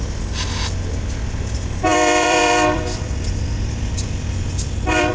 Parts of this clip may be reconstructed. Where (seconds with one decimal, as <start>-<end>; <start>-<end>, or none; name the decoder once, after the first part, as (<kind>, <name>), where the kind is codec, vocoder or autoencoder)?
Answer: 1.9-5.1 (vocoder, BigVGAN v2)